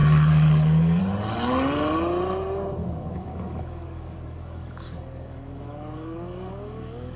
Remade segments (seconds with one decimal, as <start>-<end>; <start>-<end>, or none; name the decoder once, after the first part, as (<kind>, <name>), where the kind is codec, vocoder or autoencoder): 0.0-1.0 (codec, DAC); 2.8-7.2